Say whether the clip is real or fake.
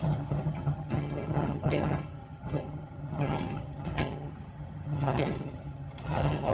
fake